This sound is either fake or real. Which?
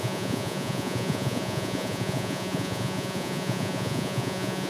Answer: fake